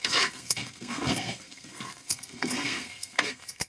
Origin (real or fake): fake